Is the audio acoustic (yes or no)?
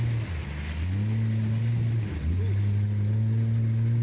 yes